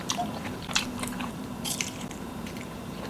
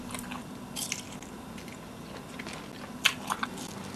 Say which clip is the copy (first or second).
first